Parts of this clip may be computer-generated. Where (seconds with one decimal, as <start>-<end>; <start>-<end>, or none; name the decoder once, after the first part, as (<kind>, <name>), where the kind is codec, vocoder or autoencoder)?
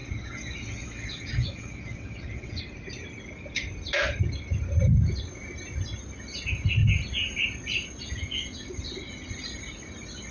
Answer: 0.0-2.6 (vocoder, WaveNeXt)